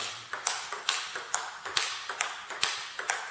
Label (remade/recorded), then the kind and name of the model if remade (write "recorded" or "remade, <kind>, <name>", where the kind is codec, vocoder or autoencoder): recorded